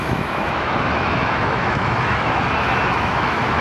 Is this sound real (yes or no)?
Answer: no